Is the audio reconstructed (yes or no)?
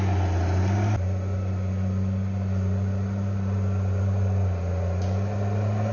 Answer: no